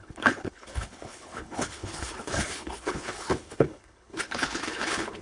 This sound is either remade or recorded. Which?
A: remade